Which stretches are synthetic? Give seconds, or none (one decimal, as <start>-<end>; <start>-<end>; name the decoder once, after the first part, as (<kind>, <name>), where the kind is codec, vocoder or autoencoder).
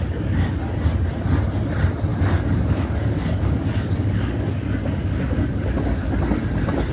0.0-0.6 (codec, DAC); 2.1-6.2